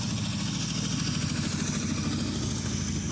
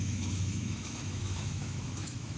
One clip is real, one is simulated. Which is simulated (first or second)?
second